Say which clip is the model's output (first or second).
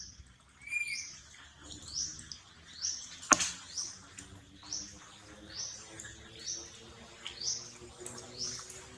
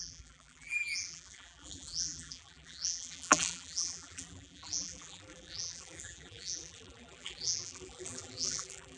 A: second